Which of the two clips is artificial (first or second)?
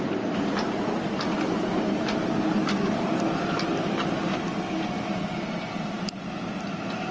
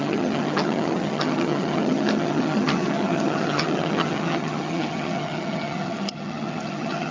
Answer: second